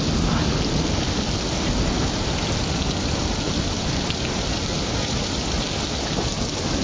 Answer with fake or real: real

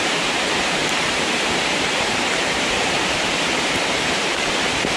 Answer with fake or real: fake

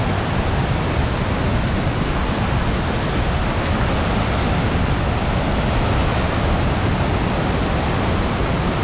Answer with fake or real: real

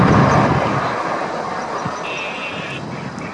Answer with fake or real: real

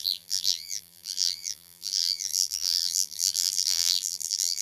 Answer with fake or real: fake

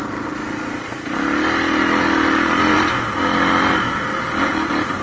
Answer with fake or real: real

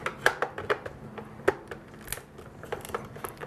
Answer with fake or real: real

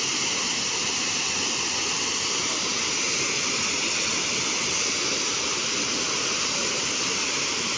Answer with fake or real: real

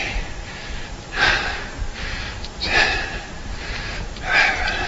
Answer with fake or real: fake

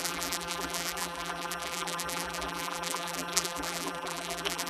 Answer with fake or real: fake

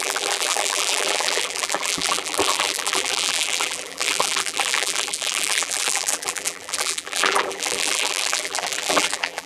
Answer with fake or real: fake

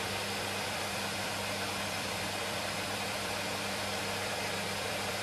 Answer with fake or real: fake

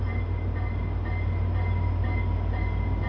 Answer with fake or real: real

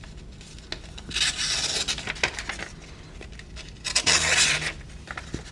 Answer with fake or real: real